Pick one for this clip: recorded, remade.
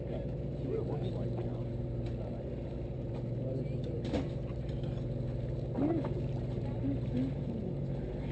remade